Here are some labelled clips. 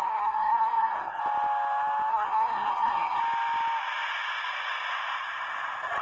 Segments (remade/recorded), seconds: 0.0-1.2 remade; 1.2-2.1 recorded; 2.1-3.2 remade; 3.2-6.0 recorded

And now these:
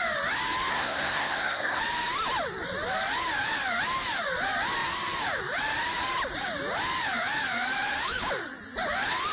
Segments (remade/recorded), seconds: 0.0-0.7 recorded; 0.7-1.8 remade; 1.8-9.3 recorded

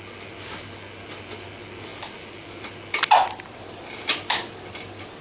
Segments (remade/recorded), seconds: 0.0-5.2 recorded

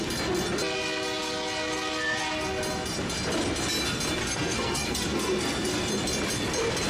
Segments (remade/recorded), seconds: 0.0-4.2 recorded; 4.2-5.9 remade; 5.9-6.9 recorded

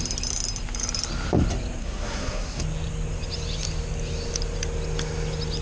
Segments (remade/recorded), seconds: 0.0-1.8 recorded; 1.8-2.6 remade; 2.6-5.6 recorded

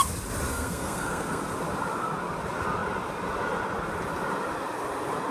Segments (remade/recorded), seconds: 0.0-0.5 recorded; 0.5-1.4 remade; 1.4-5.3 recorded